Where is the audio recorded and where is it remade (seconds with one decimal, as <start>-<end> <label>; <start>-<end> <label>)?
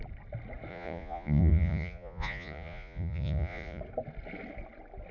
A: 0.0-0.7 recorded; 0.7-3.8 remade; 3.8-5.1 recorded